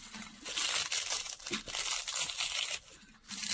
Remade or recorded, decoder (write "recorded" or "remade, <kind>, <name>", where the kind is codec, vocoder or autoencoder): recorded